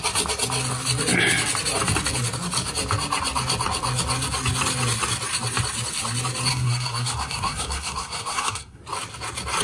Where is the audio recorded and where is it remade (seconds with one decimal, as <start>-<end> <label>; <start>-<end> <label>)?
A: 0.0-6.5 recorded; 6.5-8.8 remade; 8.8-9.6 recorded